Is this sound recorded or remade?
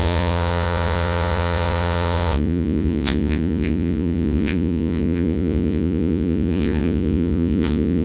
remade